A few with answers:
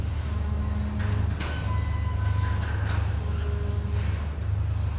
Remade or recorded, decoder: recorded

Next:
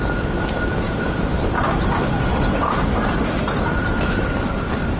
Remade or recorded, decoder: recorded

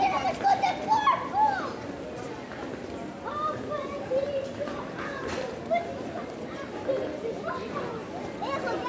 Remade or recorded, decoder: recorded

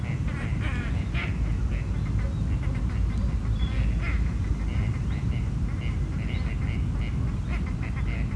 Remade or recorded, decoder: recorded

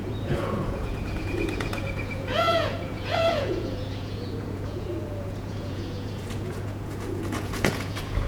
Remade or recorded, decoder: remade, vocoder, Vocos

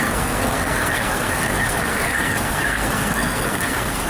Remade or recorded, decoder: remade, codec, SNAC